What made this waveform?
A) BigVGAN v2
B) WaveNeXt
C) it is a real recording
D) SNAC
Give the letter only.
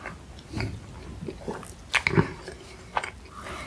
C